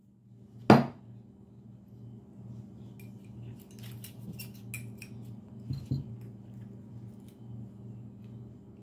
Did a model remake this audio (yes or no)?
no